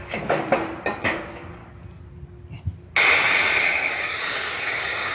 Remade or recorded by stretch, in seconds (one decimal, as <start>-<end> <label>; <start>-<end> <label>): 0.0-0.5 remade; 0.5-1.0 recorded; 1.0-1.6 remade; 1.6-3.6 recorded; 3.6-5.1 remade